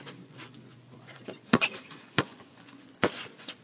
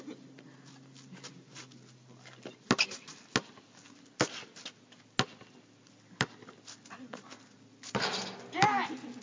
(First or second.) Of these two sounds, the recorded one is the second